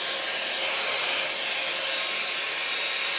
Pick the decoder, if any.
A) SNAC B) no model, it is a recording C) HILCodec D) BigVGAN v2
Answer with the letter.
B